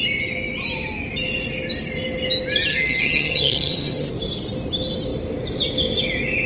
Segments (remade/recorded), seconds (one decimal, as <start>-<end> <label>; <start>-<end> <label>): 0.0-2.7 recorded; 2.7-4.1 remade; 4.1-6.5 recorded